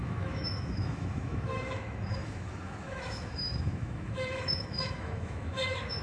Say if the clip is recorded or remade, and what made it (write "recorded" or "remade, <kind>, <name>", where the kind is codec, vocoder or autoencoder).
remade, autoencoder, DAC-VAE